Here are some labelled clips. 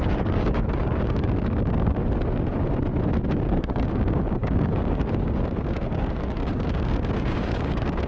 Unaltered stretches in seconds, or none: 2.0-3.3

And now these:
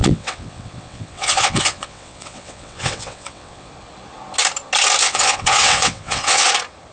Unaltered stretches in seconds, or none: 3.7-5.0; 6.5-6.9

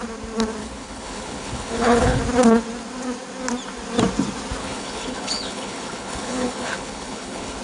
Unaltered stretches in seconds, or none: 0.0-0.6; 2.2-4.6

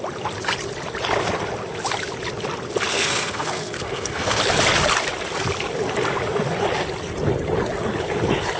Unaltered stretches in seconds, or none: 0.0-2.9; 4.4-8.6

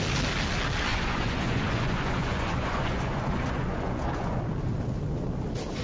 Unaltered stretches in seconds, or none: 0.0-0.9; 4.4-5.8

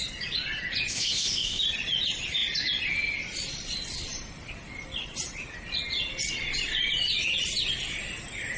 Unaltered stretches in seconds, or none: 0.0-0.9; 1.6-8.6

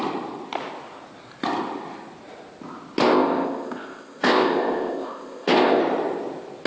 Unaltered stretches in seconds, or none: 0.0-3.0; 5.8-6.7

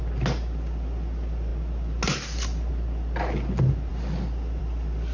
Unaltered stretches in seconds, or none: 0.0-5.1